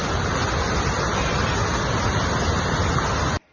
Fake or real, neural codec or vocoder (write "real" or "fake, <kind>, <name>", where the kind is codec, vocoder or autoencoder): real